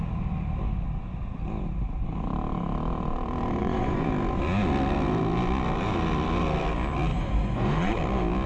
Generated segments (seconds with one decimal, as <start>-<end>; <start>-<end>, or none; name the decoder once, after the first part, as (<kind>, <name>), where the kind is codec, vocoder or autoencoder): 3.6-4.1 (vocoder, Vocos); 7.1-7.9